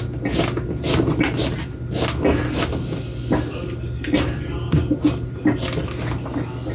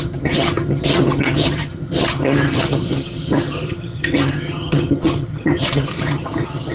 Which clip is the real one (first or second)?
first